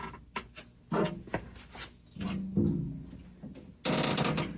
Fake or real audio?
real